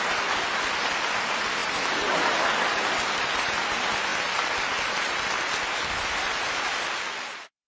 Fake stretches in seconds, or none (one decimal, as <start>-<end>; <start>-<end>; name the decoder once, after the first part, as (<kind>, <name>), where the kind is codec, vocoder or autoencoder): none

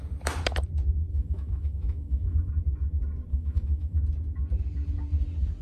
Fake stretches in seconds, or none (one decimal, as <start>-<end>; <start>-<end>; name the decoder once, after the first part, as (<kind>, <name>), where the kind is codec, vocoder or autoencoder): 1.1-2.5 (autoencoder, DAC-VAE); 3.3-4.0

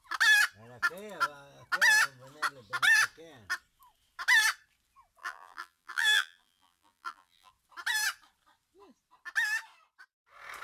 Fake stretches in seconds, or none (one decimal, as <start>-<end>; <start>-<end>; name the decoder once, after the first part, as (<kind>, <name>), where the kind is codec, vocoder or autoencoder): 5.2-7.5 (vocoder, BigVGAN v2)

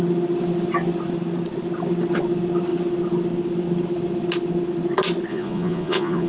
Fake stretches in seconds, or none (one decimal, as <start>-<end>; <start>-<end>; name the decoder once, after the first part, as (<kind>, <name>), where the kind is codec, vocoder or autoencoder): 5.3-6.3 (vocoder, Vocos)

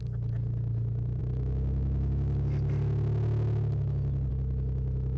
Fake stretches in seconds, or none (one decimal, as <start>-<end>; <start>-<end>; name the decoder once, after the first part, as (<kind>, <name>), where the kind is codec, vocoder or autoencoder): none

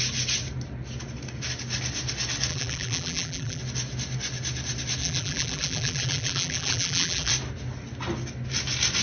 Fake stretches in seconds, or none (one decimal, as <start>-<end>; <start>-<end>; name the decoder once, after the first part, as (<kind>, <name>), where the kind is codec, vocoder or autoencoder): 2.5-3.6 (vocoder, BigVGAN v2); 5.0-7.3

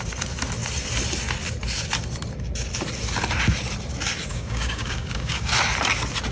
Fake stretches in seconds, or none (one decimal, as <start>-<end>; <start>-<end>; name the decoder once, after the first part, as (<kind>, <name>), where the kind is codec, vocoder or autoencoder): 4.3-5.5 (codec, DAC)